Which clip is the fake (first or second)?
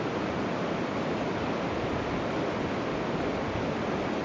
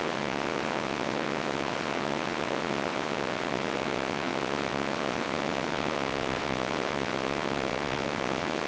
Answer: second